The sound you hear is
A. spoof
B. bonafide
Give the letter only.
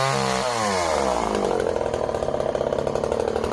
B